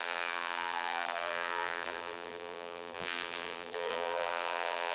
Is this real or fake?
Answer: fake